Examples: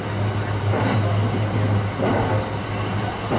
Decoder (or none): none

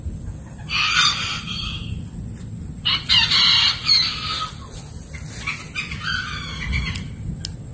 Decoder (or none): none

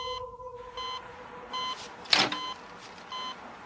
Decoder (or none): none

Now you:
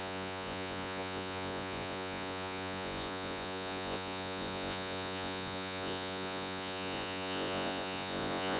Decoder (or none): vocoder, Vocos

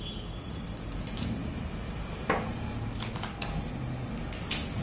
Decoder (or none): none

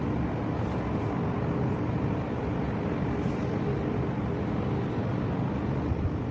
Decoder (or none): none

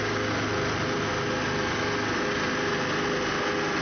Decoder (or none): none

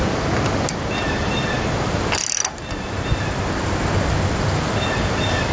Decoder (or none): none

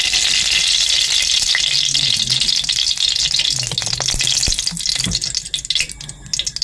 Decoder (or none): none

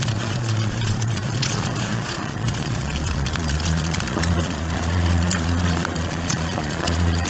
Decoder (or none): vocoder, Vocos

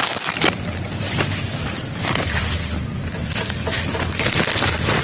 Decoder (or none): none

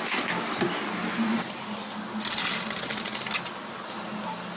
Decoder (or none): none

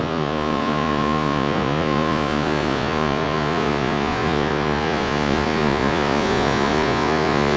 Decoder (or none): vocoder, Vocos